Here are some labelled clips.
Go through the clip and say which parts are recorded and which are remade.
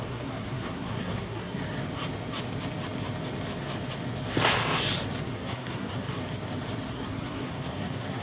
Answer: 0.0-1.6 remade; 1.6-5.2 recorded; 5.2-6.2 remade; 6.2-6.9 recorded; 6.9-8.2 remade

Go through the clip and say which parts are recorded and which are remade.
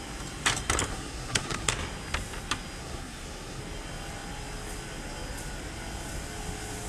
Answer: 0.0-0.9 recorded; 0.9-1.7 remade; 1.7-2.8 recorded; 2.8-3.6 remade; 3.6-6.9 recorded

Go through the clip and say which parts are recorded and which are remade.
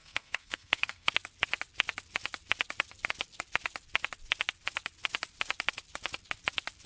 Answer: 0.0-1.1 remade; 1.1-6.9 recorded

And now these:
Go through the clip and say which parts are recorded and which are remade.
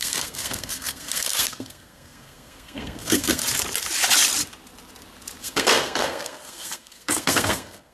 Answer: 0.0-3.4 remade; 3.4-5.4 recorded; 5.4-7.9 remade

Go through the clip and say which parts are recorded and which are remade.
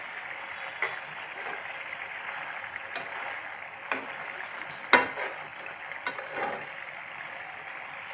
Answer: 0.0-8.1 recorded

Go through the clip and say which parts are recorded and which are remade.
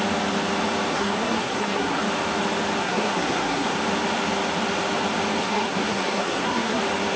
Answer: 0.0-0.9 recorded; 0.9-2.0 remade; 2.0-2.8 recorded; 2.8-3.8 remade; 3.8-5.4 recorded; 5.4-6.8 remade; 6.8-7.2 recorded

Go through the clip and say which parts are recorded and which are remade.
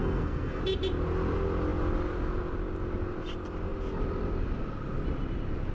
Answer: 0.0-0.6 remade; 0.6-5.7 recorded